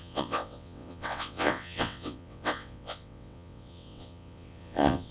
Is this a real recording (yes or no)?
no